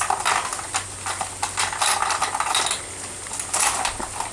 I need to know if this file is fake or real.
real